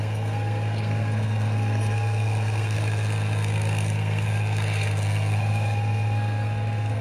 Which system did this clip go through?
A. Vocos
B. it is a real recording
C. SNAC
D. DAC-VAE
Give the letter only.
C